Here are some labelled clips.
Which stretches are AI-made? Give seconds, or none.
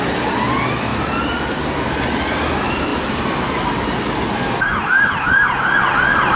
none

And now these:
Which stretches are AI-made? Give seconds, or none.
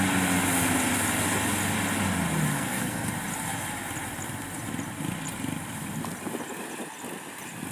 2.5-3.1 (codec, SNAC)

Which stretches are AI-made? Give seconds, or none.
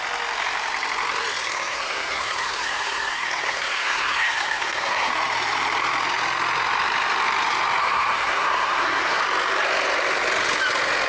1.5-5.1 (codec, SNAC); 7.8-9.2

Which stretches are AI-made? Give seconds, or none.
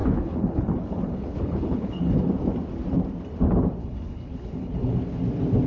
0.0-2.3 (codec, HILCodec); 3.8-5.2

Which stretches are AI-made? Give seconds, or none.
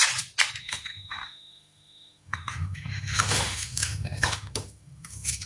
0.6-5.5 (autoencoder, DAC-VAE)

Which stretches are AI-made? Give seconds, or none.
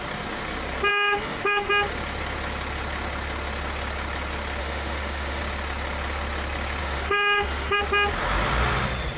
0.9-1.7 (autoencoder, DAC-VAE); 4.6-5.4; 6.8-7.8